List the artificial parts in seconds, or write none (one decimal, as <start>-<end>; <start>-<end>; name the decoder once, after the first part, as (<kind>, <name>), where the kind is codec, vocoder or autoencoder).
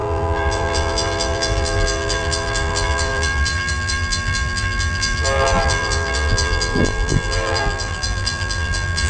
0.0-9.1 (vocoder, BigVGAN v2)